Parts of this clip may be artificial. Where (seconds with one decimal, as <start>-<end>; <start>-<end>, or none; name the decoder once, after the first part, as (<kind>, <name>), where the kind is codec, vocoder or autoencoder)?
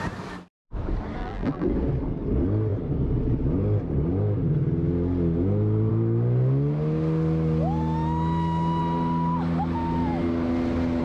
1.2-1.7 (vocoder, BigVGAN v2)